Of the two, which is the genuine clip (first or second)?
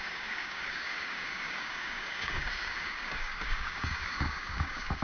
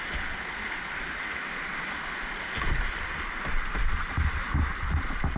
second